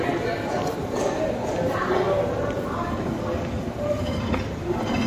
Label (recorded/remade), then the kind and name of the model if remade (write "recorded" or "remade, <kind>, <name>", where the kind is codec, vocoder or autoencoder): recorded